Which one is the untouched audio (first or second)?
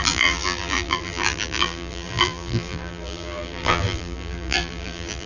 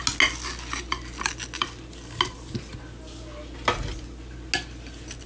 second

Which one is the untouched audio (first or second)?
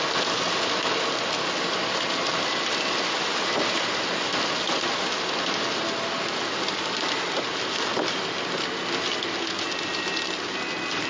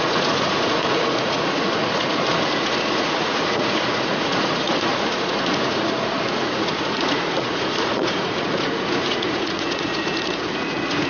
first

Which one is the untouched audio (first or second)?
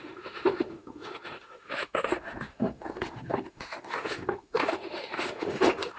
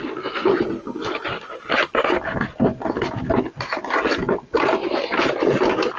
second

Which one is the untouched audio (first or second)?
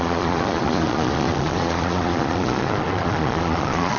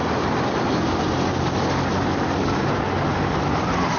second